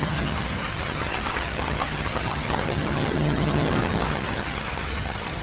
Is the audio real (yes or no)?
no